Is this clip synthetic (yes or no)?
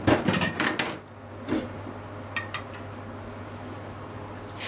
no